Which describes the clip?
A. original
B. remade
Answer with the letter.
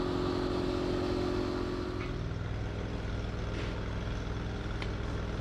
A